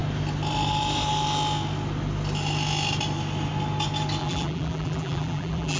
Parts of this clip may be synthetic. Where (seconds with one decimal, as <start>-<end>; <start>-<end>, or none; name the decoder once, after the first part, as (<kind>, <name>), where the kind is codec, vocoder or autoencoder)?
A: 4.2-5.8 (vocoder, BigVGAN v2)